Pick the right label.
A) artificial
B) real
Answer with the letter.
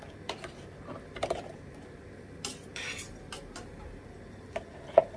B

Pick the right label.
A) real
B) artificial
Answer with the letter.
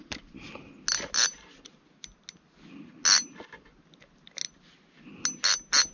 A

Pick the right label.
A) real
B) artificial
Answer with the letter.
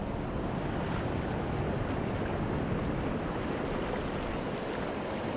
A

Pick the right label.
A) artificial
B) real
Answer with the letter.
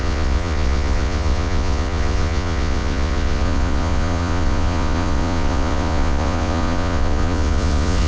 A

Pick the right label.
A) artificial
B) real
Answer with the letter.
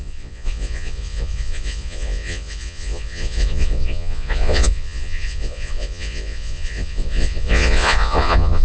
A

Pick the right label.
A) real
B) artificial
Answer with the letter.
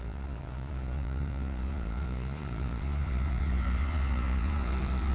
B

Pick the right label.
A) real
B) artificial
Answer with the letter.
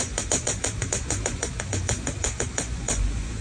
B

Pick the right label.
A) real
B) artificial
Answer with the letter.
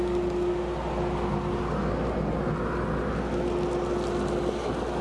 A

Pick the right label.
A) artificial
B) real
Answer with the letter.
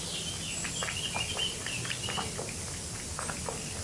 B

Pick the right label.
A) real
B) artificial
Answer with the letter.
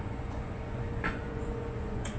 B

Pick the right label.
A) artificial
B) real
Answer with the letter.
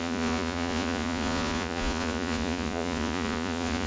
A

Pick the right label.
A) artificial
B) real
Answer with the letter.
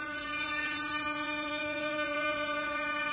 A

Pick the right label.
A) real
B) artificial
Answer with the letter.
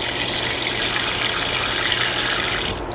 A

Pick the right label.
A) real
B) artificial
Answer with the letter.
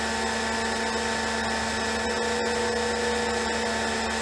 A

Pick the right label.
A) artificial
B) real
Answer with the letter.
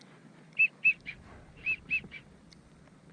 B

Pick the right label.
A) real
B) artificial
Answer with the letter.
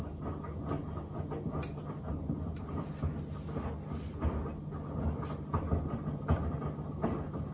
A